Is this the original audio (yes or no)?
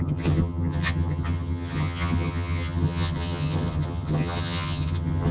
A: no